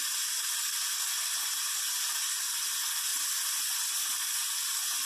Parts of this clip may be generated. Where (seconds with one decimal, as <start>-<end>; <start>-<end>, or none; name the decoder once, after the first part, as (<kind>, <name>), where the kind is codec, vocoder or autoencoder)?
none